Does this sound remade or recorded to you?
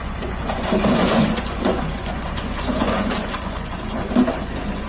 remade